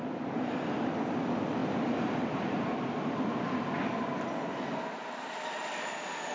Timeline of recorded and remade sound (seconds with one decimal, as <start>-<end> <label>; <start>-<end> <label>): 0.0-6.3 recorded